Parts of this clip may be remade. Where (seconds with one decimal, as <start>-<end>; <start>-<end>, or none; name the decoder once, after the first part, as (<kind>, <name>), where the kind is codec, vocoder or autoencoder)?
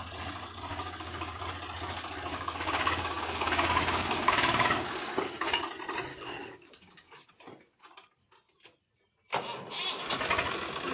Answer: 0.7-1.4 (codec, DAC); 2.3-5.5; 6.1-7.3